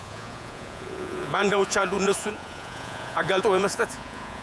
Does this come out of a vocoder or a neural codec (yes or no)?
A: yes